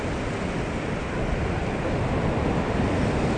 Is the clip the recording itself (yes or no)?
yes